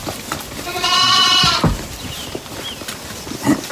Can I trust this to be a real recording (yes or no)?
no